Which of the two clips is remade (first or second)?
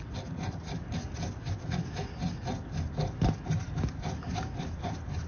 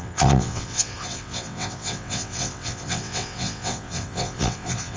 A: second